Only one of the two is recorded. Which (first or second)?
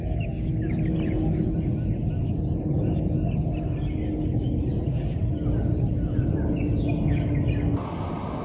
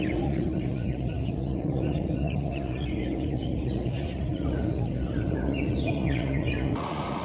first